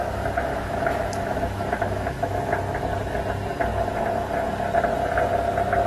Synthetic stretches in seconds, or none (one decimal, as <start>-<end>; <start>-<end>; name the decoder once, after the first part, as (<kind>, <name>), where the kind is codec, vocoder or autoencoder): 0.5-2.6 (autoencoder, DAC-VAE)